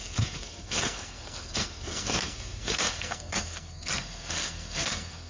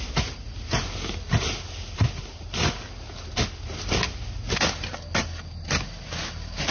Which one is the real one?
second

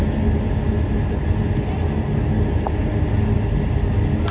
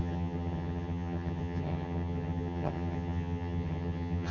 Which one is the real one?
first